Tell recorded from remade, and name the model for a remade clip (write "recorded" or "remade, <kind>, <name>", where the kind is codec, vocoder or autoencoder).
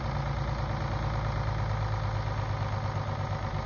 recorded